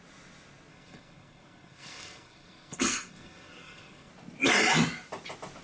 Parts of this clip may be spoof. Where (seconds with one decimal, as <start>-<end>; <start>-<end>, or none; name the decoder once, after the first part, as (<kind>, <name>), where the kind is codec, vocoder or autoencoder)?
0.7-4.1 (codec, SNAC)